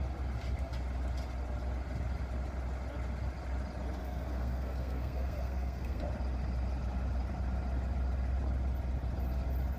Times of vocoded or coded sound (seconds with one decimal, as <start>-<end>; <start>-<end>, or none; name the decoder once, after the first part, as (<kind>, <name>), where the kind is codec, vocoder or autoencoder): 4.0-6.0 (codec, SNAC)